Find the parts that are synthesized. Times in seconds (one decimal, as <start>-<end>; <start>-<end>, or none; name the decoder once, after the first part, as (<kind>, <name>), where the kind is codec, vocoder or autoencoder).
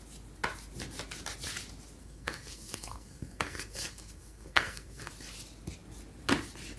2.0-5.1 (codec, SNAC)